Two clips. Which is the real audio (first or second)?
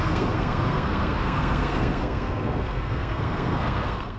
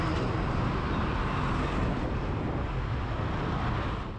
second